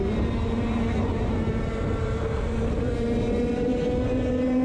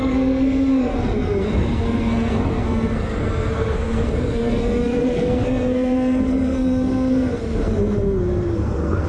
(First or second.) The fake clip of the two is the second